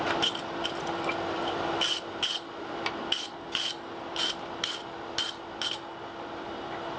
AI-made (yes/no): no